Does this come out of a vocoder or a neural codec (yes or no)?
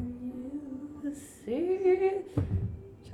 yes